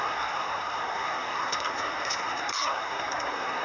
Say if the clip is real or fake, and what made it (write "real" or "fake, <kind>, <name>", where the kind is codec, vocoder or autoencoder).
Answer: fake, codec, SNAC